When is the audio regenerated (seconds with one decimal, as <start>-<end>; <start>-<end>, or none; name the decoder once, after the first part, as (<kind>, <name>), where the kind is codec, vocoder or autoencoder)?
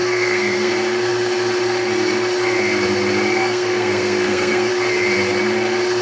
0.0-0.7 (codec, SNAC); 3.4-4.7